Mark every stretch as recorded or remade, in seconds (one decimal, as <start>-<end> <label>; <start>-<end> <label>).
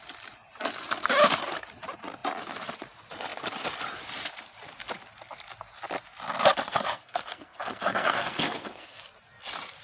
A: 0.0-6.7 recorded; 6.7-9.0 remade; 9.0-9.8 recorded